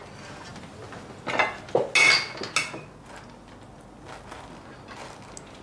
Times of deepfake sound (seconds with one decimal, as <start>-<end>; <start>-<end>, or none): none